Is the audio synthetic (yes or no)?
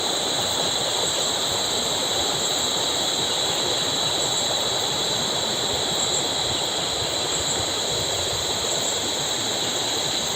no